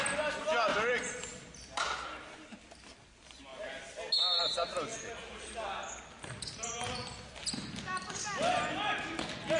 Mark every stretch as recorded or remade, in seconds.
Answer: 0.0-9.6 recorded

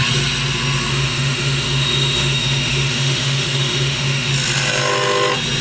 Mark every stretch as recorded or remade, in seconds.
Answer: 0.0-0.9 recorded; 0.9-4.3 remade; 4.3-5.6 recorded